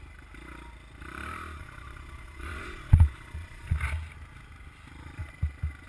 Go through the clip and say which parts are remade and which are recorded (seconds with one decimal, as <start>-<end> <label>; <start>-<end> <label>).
0.0-1.6 recorded; 1.6-3.8 remade; 3.8-5.9 recorded